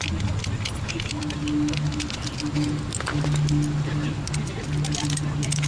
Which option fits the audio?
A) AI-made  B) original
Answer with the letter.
B